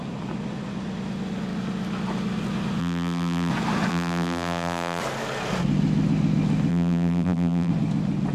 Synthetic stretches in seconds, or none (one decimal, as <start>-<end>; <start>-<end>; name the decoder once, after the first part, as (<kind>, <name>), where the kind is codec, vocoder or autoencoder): 2.8-3.5 (vocoder, BigVGAN v2); 3.9-5.0; 6.7-7.7